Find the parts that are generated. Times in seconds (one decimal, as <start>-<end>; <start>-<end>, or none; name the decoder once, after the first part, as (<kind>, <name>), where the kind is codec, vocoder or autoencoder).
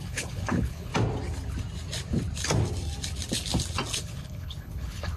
0.0-0.9 (codec, HILCodec); 4.0-5.2